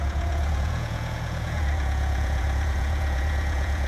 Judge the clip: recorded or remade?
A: remade